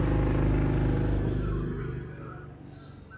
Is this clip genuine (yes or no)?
yes